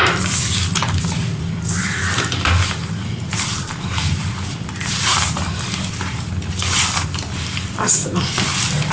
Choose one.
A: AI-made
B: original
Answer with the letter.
A